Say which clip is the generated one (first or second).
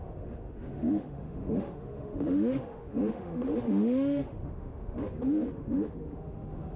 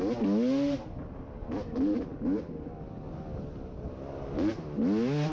first